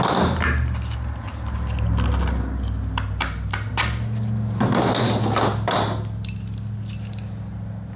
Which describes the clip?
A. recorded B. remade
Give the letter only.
A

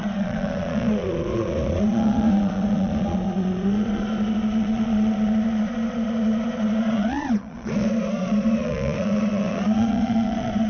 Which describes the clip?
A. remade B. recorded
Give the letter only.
A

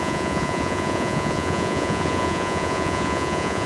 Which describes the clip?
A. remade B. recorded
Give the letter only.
A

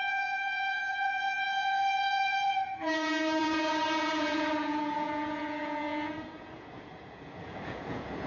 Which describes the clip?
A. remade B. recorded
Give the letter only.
A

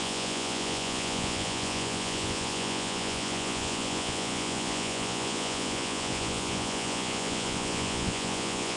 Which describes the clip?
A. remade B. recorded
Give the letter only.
A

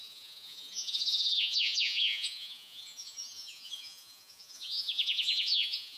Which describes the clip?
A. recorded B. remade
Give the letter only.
B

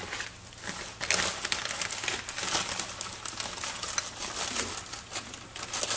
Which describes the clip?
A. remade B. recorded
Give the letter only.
B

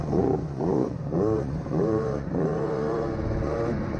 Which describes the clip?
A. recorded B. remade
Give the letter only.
B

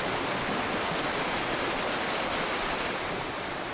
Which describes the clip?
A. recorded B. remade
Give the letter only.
A